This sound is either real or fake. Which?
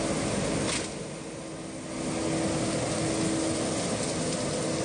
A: real